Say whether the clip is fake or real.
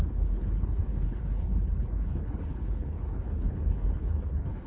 fake